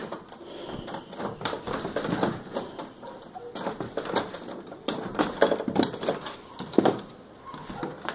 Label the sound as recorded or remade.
recorded